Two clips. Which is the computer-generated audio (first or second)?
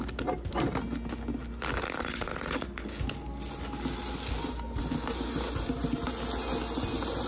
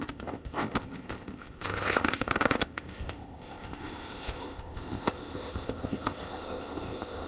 second